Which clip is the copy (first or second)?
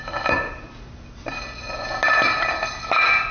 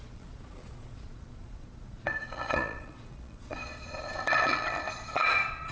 second